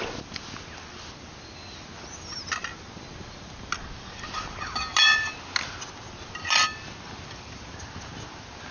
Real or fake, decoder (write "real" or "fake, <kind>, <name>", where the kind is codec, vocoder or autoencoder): real